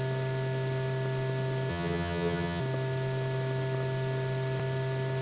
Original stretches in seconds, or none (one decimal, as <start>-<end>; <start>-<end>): 0.0-1.7; 2.6-5.2